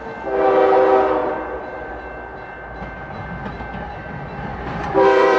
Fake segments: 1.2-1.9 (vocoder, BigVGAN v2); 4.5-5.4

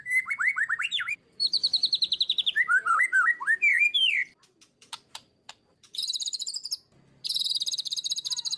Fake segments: 0.0-6.5 (vocoder, BigVGAN v2); 7.2-8.6

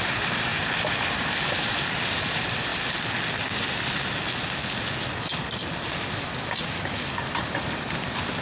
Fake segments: 0.0-2.7 (vocoder, BigVGAN v2); 7.3-8.4

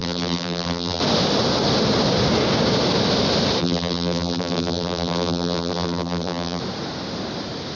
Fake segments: 0.0-1.0 (vocoder, BigVGAN v2); 3.6-6.6

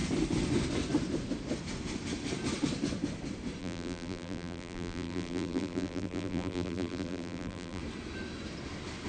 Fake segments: 3.6-7.8 (vocoder, BigVGAN v2)

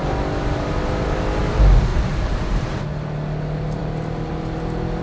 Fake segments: 1.9-2.7 (vocoder, BigVGAN v2)

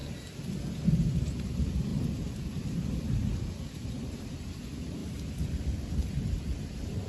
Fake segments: 1.0-7.1 (vocoder, BigVGAN v2)

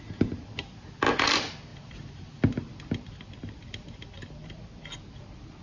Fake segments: none